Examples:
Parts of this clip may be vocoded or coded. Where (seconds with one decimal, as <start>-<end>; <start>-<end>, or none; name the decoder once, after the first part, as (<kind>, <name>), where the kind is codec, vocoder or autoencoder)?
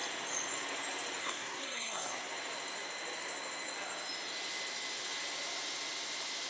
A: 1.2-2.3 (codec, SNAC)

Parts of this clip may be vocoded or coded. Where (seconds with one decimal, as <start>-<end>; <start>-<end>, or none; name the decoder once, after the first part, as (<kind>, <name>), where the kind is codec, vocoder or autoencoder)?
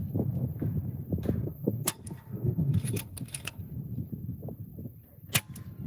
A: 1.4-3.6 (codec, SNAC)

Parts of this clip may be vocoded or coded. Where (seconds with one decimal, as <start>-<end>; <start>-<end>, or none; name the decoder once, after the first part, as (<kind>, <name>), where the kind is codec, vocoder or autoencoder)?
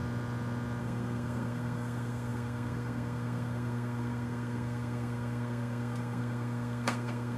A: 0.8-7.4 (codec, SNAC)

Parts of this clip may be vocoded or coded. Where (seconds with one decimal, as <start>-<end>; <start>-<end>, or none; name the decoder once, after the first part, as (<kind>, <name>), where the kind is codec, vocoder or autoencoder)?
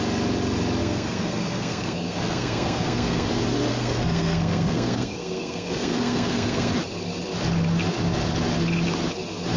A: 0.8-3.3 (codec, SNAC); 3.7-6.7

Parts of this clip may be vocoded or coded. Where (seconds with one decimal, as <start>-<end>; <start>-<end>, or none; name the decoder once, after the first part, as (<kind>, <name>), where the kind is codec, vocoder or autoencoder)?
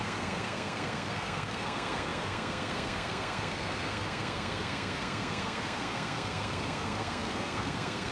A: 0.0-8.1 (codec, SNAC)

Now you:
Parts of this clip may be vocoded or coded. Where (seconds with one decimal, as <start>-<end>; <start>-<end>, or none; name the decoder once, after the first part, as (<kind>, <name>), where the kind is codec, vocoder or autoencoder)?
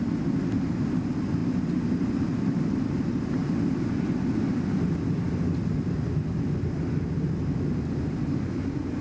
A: none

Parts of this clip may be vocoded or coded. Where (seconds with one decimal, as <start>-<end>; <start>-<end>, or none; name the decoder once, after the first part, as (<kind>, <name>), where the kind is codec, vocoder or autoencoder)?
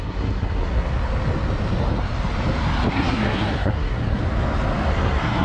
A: 0.0-0.9 (codec, SNAC); 2.9-4.2; 4.9-5.4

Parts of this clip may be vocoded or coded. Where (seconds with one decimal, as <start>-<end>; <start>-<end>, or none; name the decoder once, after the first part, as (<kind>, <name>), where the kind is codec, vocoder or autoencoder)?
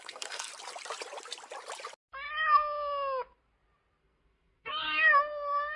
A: 0.0-0.5 (codec, SNAC); 4.0-5.8